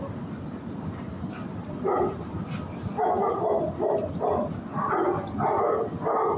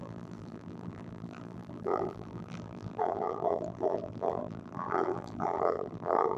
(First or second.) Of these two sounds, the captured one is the first